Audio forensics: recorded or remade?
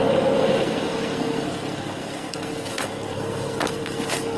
remade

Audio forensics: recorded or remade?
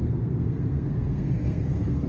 remade